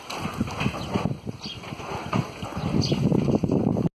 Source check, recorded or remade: recorded